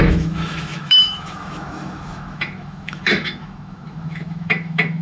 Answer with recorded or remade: remade